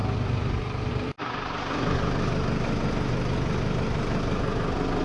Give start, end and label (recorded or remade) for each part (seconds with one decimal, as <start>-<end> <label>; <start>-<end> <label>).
0.0-5.0 recorded